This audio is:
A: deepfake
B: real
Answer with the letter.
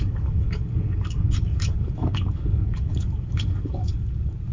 A